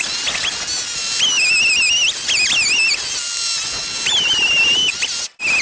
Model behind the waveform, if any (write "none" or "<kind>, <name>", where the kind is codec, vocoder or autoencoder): none